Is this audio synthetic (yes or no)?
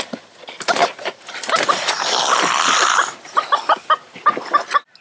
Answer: no